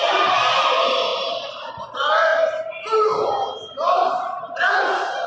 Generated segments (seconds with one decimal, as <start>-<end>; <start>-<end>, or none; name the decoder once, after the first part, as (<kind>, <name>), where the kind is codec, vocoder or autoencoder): 1.1-1.7 (vocoder, BigVGAN v2); 2.3-4.4